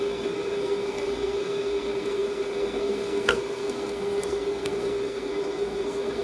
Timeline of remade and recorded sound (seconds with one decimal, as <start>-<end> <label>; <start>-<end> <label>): 0.0-6.2 remade